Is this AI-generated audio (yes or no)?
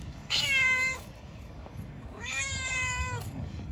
yes